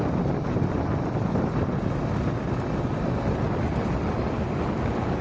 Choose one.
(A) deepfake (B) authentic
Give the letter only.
B